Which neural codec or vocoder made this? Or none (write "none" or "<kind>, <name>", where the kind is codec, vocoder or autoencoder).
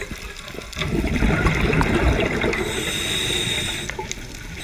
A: none